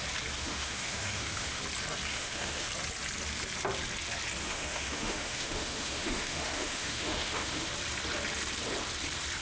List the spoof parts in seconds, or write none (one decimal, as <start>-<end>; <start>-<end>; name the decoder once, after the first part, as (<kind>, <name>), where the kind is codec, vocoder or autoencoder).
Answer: 0.4-1.6 (autoencoder, DAC-VAE); 2.1-2.7; 4.4-7.7